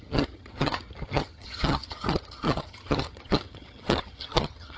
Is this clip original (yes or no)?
no